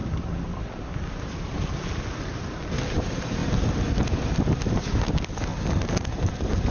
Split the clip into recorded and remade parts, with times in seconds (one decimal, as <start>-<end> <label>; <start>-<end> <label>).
0.0-2.9 recorded; 2.9-3.4 remade; 3.4-5.0 recorded; 5.0-5.5 remade; 5.5-6.3 recorded; 6.3-6.7 remade